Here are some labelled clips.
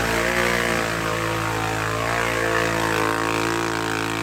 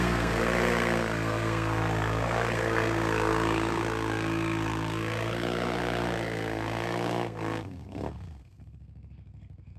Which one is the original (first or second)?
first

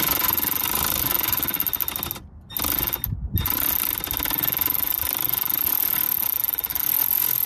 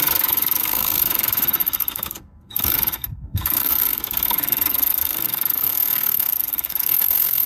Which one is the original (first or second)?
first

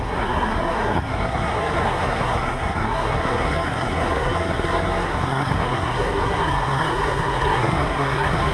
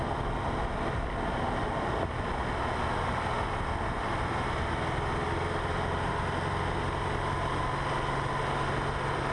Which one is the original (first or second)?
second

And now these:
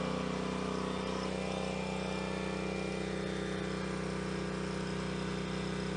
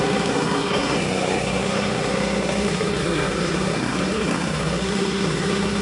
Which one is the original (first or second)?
first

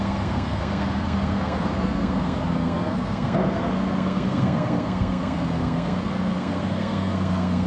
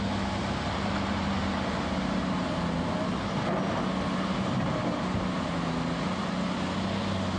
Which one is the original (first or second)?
second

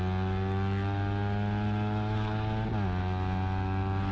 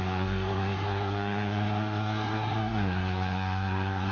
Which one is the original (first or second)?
first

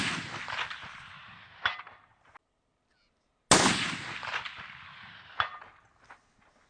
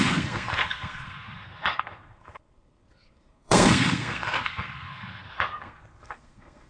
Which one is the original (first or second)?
first